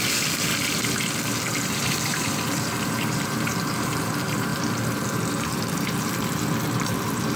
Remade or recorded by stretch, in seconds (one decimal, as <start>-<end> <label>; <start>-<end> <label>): 0.0-0.5 remade; 0.5-1.7 recorded; 1.7-4.5 remade; 4.5-5.3 recorded; 5.3-7.4 remade